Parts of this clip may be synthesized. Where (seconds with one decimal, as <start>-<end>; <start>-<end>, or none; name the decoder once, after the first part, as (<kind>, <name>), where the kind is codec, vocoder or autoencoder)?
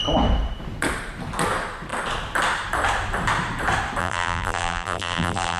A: 4.0-5.6 (vocoder, BigVGAN v2)